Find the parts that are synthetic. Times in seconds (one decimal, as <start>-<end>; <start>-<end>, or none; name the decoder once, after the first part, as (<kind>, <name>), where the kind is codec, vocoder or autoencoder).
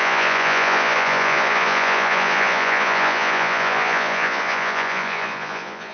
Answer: 0.0-5.9 (vocoder, Vocos)